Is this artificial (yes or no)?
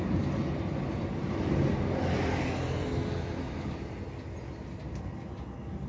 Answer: no